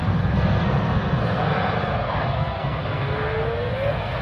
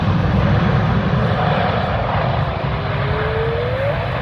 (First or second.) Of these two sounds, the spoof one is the first